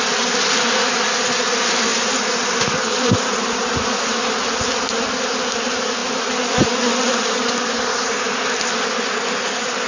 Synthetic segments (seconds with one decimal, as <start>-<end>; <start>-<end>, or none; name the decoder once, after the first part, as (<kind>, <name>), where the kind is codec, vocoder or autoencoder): 1.9-3.7 (vocoder, BigVGAN v2)